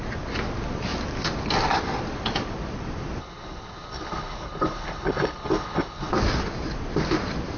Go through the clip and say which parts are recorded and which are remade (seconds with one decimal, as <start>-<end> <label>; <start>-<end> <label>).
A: 0.0-3.2 recorded; 3.2-6.1 remade; 6.1-7.6 recorded